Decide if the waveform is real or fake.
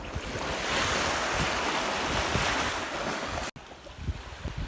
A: real